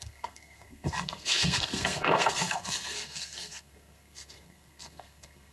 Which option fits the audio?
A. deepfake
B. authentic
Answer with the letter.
A